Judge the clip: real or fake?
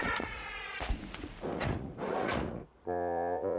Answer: fake